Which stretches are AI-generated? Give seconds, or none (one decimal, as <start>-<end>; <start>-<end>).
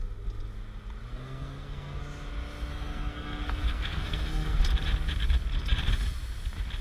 1.1-2.0; 2.7-4.6